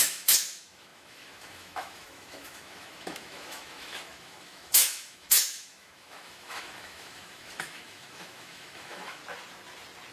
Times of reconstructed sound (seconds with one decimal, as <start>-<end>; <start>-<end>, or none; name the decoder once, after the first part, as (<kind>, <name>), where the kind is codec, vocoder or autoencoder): 0.0-9.2 (autoencoder, DAC-VAE)